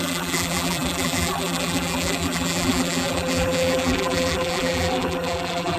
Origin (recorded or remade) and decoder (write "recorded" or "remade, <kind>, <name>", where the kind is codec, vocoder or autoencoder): remade, vocoder, BigVGAN v2